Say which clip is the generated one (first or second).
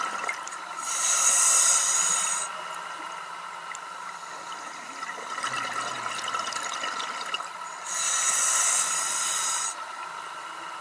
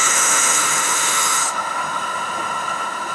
second